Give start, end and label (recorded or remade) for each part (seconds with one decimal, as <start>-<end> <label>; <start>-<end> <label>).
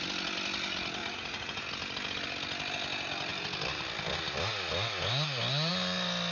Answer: 0.0-1.0 recorded; 1.0-1.6 remade; 1.6-6.3 recorded